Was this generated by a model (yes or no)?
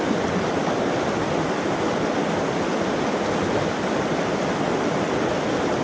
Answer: no